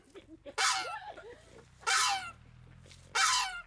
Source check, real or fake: real